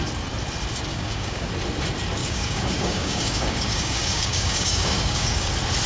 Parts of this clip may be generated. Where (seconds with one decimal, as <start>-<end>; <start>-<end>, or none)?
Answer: 0.9-1.5; 2.2-5.5